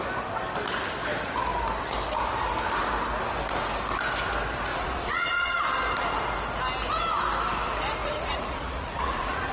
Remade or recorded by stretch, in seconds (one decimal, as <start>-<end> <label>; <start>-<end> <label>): 0.0-4.7 recorded; 4.7-5.6 remade; 5.6-8.0 recorded; 8.0-9.5 remade